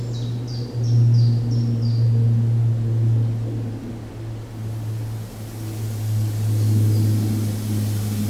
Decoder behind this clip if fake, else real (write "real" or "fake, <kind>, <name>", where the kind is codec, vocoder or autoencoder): real